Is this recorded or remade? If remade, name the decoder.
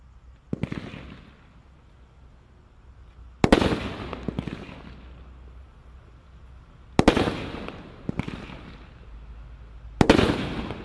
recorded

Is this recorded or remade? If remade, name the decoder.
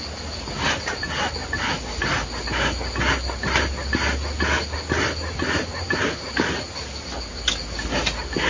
recorded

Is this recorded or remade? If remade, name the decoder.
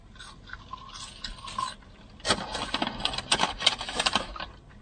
recorded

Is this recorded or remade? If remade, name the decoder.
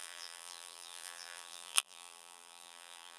remade, vocoder, BigVGAN v2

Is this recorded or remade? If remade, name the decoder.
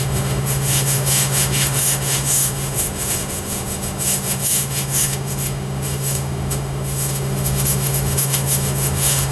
remade, autoencoder, DAC-VAE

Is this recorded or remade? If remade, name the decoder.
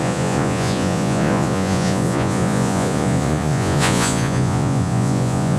remade, vocoder, Vocos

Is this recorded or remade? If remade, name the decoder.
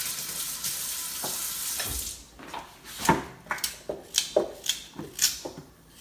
recorded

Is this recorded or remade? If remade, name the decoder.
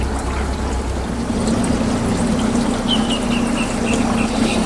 recorded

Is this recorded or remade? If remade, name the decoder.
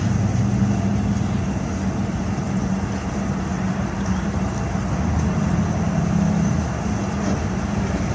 remade, vocoder, BigVGAN v2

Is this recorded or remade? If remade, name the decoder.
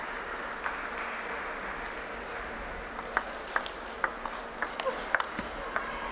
recorded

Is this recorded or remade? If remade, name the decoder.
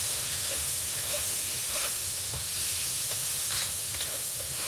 remade, autoencoder, DAC-VAE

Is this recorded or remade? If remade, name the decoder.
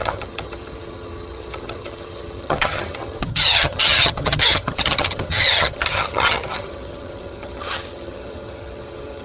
remade, vocoder, HiFi-GAN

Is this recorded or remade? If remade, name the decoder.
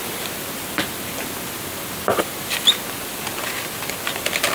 recorded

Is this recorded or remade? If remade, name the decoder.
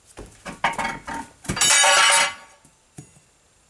recorded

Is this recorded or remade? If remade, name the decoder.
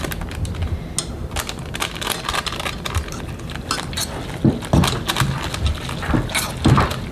recorded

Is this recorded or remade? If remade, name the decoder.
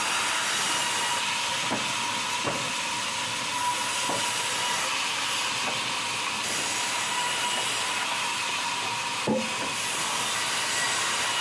recorded